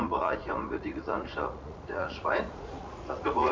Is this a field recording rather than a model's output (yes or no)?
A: no